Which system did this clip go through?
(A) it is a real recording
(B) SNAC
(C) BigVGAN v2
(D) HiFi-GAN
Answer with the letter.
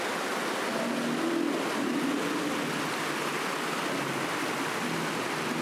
A